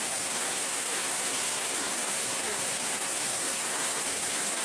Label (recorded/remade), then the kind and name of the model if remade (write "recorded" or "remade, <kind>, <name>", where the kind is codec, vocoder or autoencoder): remade, codec, SNAC